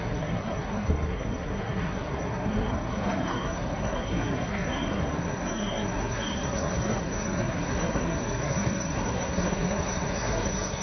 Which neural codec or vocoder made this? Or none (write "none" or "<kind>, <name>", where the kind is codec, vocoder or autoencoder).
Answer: codec, SNAC